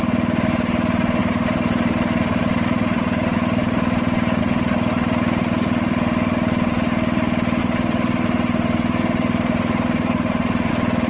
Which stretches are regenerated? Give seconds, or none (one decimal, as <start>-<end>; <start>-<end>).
1.2-4.4; 7.6-10.7